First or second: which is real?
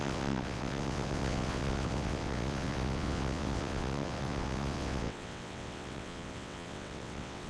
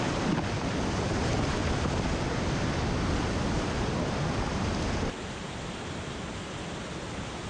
second